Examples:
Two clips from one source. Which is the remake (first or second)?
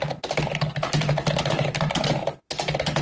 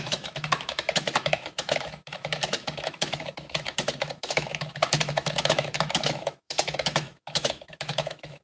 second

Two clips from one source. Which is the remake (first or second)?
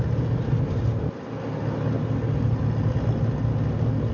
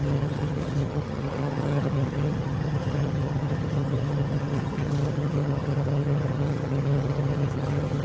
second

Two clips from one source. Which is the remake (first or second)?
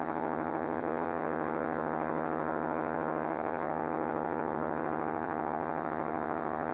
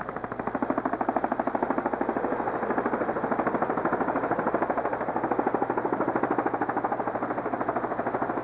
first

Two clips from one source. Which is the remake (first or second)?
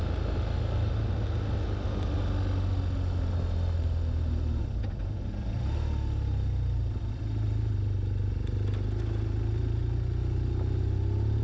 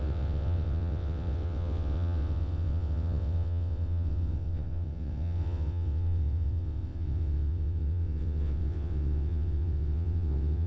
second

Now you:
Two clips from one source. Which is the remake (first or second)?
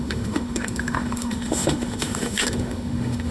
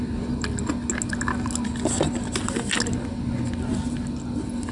first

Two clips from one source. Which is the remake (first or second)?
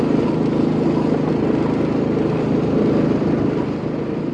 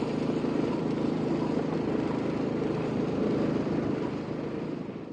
second